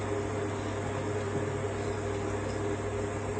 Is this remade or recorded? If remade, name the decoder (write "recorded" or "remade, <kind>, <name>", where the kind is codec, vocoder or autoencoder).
recorded